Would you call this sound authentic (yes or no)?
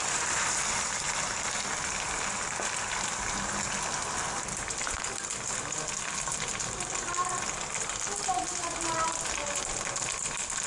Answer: yes